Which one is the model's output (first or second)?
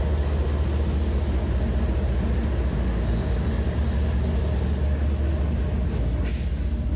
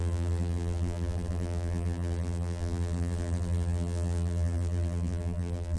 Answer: second